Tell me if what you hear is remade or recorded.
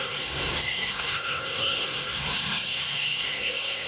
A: remade